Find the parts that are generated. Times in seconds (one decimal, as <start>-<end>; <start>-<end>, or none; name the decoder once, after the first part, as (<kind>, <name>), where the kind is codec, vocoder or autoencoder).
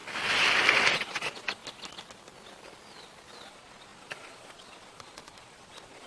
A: 0.9-1.6 (vocoder, Vocos); 3.5-6.1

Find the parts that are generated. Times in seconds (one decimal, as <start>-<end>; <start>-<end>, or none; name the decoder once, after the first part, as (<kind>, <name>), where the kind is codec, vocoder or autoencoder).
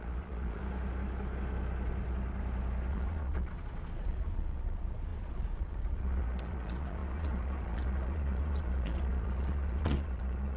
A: 0.0-0.6 (vocoder, Vocos); 2.9-10.6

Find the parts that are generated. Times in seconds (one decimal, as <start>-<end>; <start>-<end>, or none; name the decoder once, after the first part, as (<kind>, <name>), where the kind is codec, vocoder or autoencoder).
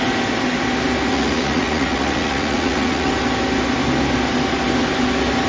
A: 1.1-3.1 (vocoder, Vocos)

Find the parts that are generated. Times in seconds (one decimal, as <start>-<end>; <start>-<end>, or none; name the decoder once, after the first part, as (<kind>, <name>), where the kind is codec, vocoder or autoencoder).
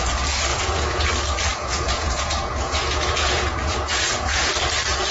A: 0.5-1.1 (vocoder, Vocos); 1.5-4.5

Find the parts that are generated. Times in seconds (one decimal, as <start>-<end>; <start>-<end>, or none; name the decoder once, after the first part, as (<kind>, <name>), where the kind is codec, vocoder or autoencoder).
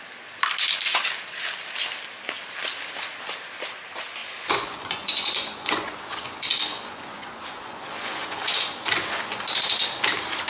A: 4.2-9.4 (vocoder, Vocos)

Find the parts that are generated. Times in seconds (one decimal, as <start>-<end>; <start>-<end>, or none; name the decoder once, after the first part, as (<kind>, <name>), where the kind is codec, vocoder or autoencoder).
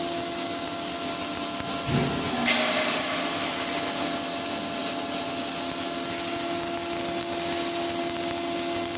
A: none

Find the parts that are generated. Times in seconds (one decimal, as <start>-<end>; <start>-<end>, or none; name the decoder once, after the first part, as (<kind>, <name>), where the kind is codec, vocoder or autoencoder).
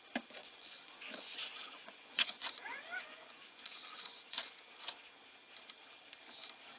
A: 0.4-4.5 (vocoder, Vocos)